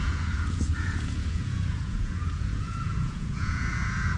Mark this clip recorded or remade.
remade